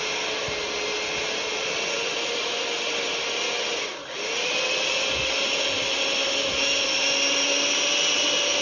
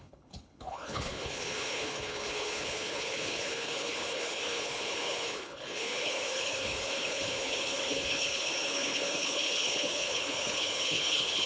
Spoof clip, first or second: second